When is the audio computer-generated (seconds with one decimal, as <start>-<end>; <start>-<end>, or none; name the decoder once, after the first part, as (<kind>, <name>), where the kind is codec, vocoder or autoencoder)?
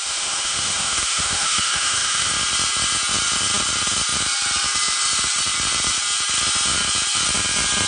0.0-2.3 (autoencoder, DAC-VAE)